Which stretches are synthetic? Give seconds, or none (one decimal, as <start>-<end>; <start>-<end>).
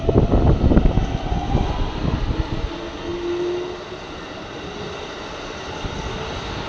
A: none